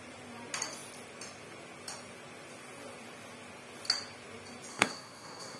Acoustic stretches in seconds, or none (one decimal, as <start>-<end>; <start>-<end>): 0.0-4.7

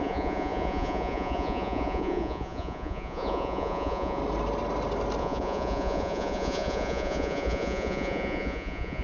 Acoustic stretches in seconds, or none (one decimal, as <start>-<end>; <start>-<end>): 4.2-5.2